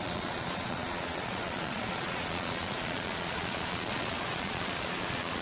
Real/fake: fake